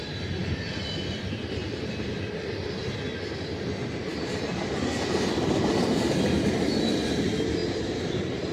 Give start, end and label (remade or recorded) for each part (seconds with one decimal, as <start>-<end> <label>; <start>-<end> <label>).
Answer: 0.0-1.6 recorded; 1.6-3.0 remade; 3.0-8.5 recorded